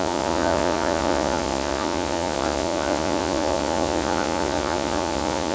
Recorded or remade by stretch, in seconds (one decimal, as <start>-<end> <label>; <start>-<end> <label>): 0.0-5.5 remade

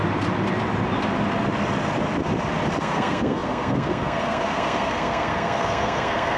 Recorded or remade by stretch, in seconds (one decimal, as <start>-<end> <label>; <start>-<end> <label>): 0.0-2.8 recorded; 2.8-6.4 remade

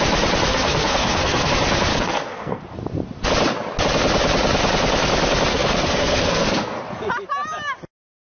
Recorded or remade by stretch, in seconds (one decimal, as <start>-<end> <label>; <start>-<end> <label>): 0.0-0.5 recorded; 0.5-1.5 remade; 1.5-1.9 recorded; 1.9-2.6 remade; 2.6-5.5 recorded; 5.5-6.8 remade; 6.8-8.3 recorded